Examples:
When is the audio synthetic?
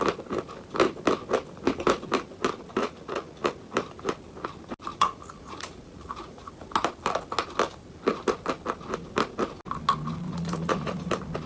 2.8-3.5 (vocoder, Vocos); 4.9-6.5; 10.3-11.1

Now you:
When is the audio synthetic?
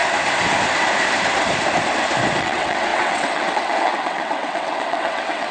2.4-5.5 (vocoder, WaveNeXt)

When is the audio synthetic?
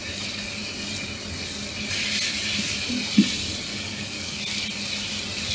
3.7-4.4 (codec, DAC)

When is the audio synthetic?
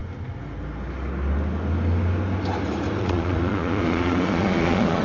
3.0-5.0 (vocoder, Vocos)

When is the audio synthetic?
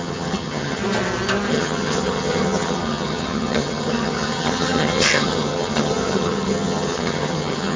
0.0-0.8 (vocoder, HiFi-GAN); 1.5-7.8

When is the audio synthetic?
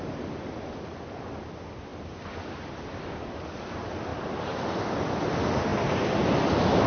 4.1-4.8 (vocoder, BigVGAN v2)